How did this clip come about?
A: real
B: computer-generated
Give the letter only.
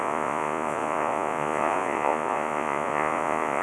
B